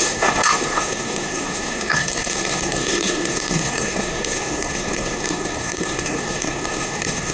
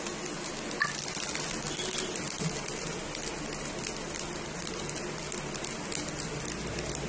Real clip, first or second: second